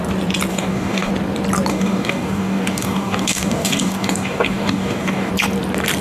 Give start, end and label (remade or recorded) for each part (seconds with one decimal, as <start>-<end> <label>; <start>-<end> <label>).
0.0-0.5 recorded; 0.5-1.1 remade; 1.1-1.7 recorded; 1.7-5.3 remade; 5.3-6.0 recorded